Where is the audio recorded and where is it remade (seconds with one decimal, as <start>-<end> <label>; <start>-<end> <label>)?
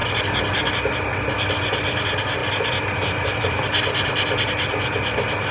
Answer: 0.0-5.5 recorded